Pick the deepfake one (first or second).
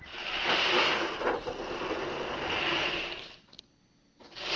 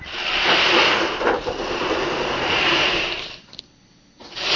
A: second